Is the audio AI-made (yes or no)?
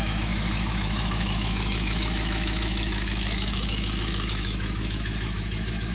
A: yes